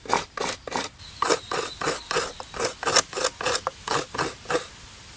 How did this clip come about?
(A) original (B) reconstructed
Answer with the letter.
A